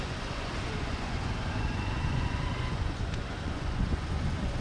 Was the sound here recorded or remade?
remade